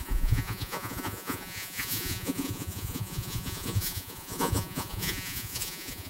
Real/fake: fake